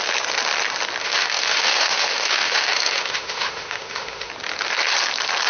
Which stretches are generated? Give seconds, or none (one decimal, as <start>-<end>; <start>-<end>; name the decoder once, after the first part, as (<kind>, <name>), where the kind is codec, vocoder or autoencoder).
1.0-4.3 (autoencoder, DAC-VAE)